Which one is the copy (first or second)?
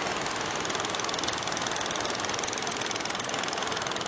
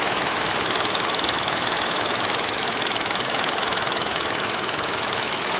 second